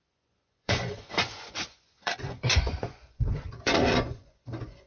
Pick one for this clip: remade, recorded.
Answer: remade